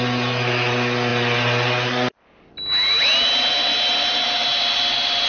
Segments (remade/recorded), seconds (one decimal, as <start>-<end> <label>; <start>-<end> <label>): 0.0-5.3 recorded